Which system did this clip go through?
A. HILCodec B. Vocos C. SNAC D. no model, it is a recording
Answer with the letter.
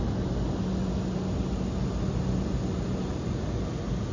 D